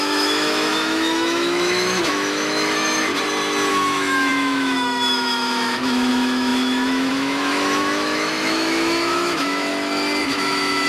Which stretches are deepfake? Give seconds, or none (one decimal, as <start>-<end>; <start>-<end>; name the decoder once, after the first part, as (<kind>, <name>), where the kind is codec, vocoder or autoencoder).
0.0-3.1 (autoencoder, DAC-VAE); 3.7-9.7; 10.2-10.9